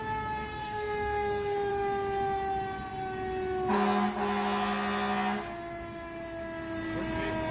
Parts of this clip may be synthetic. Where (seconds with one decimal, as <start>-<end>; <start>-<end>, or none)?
0.5-1.7